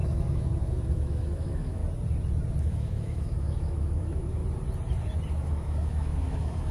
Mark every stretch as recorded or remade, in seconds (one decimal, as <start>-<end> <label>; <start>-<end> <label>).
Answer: 0.0-1.8 remade; 1.8-2.6 recorded; 2.6-4.4 remade; 4.4-5.3 recorded; 5.3-6.7 remade